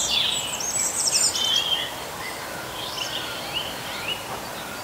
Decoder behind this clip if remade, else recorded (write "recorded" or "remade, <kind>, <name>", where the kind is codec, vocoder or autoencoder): remade, vocoder, BigVGAN v2